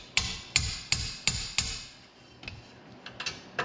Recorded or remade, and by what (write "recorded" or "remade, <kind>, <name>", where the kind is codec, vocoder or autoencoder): recorded